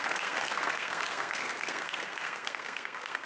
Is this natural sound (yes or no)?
no